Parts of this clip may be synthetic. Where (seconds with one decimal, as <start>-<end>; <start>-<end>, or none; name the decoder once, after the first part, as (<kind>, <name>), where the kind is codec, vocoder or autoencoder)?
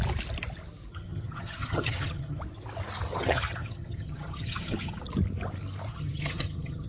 0.9-2.4 (vocoder, HiFi-GAN); 3.1-5.0; 5.9-6.9